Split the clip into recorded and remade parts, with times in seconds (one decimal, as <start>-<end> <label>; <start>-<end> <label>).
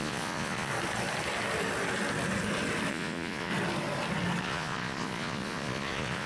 0.0-0.7 remade; 0.7-2.9 recorded; 2.9-3.5 remade; 3.5-4.4 recorded; 4.4-6.3 remade